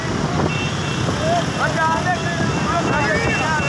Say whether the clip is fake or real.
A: real